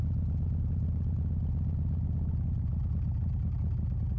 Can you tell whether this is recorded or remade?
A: recorded